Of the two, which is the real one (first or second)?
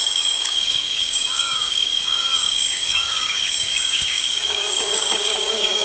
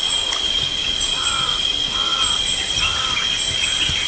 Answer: second